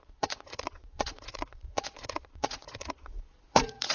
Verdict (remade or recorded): remade